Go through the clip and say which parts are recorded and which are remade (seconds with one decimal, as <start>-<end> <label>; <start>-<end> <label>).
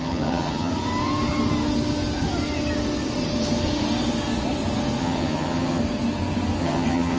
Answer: 0.0-0.7 remade; 0.7-5.0 recorded; 5.0-5.8 remade; 5.8-6.6 recorded; 6.6-7.2 remade